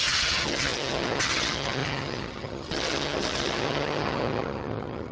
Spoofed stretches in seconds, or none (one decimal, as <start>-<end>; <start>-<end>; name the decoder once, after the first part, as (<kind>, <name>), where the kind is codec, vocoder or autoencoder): 0.0-5.1 (vocoder, HiFi-GAN)